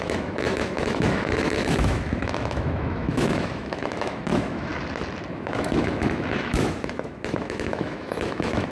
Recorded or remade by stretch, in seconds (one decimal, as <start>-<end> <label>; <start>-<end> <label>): 0.0-4.7 remade; 4.7-5.3 recorded; 5.3-8.7 remade

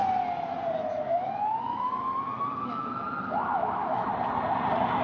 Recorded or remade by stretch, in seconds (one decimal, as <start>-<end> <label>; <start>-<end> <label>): 0.0-1.1 recorded; 1.1-4.1 remade; 4.1-5.0 recorded

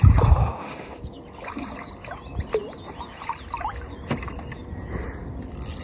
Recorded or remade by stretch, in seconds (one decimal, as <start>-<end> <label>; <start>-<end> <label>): 0.0-0.4 recorded; 0.4-1.0 remade; 1.0-5.8 recorded